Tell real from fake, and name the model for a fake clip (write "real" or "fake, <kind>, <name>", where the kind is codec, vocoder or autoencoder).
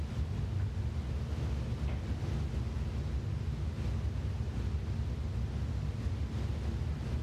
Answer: real